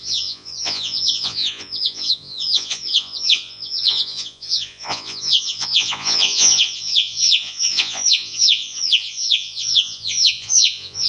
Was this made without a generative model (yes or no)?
no